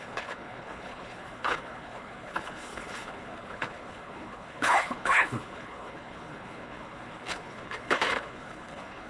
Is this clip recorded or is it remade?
remade